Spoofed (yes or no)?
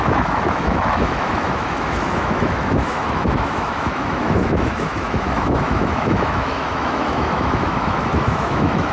yes